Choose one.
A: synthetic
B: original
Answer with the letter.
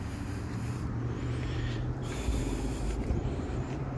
A